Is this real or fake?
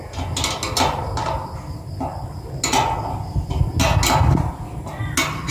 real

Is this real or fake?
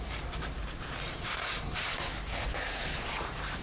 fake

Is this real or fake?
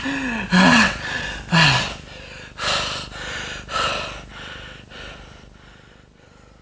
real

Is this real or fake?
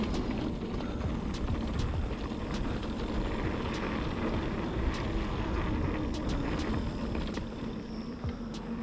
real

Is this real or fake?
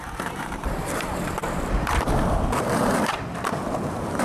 fake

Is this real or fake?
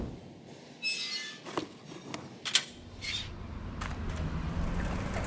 real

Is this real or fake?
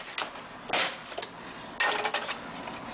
real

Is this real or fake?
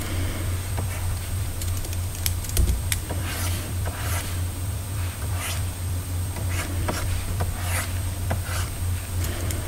fake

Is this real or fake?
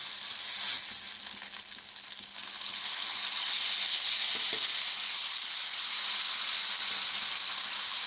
real